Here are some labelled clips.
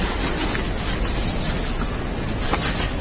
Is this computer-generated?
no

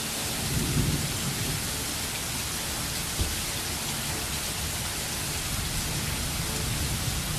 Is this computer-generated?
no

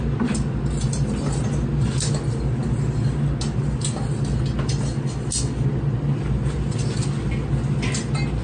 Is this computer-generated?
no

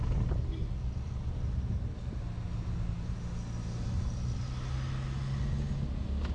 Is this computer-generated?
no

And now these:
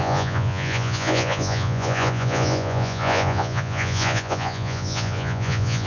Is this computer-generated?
yes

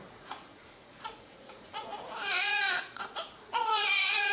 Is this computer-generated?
yes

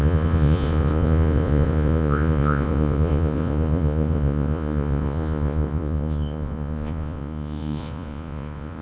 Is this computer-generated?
yes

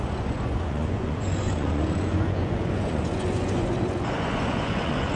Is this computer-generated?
yes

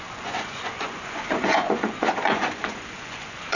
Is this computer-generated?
yes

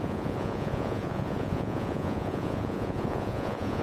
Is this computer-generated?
yes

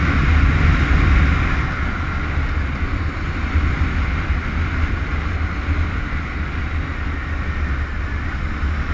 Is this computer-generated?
no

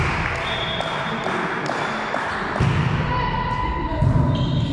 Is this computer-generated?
no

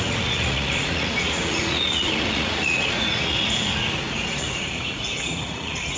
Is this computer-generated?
yes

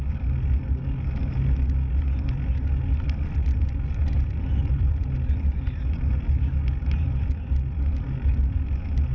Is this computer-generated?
no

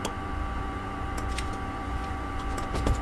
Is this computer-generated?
yes